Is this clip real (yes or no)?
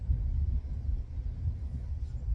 yes